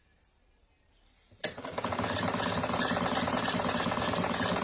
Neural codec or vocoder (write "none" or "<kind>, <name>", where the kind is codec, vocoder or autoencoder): none